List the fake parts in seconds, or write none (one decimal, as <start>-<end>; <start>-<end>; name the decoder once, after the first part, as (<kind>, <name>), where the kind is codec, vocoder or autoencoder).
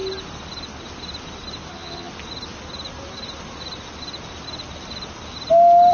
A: 1.7-2.1 (vocoder, HiFi-GAN)